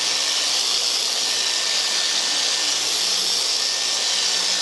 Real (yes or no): yes